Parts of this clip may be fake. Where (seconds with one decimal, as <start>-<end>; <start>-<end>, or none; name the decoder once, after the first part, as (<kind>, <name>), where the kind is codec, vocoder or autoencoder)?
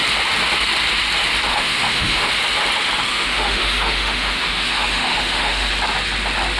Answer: 1.5-2.3 (autoencoder, DAC-VAE); 3.1-5.7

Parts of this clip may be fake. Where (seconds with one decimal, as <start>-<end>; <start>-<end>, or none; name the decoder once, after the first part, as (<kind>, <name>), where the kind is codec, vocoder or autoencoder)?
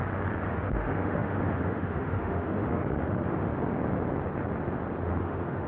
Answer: 0.5-3.5 (autoencoder, DAC-VAE); 5.2-5.7